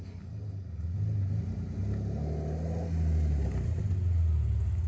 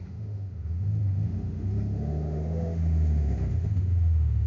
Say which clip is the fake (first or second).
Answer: second